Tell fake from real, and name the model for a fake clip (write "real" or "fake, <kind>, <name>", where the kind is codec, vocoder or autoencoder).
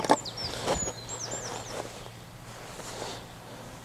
real